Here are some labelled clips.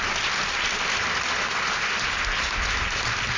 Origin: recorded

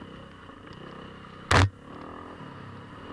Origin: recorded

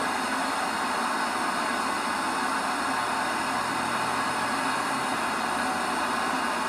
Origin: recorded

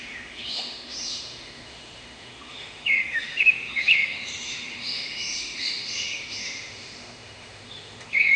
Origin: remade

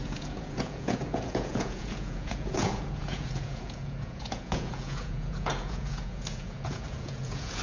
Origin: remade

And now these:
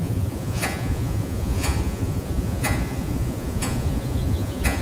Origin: remade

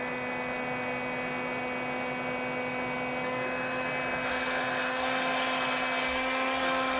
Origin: recorded